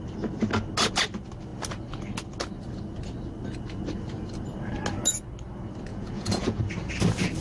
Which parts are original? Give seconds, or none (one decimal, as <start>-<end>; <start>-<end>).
0.0-5.9; 6.6-7.4